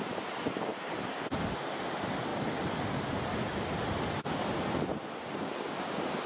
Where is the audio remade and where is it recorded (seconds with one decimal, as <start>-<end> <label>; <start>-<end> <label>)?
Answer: 0.0-6.3 recorded